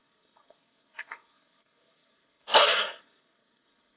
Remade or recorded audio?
remade